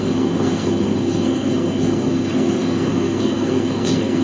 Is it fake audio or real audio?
fake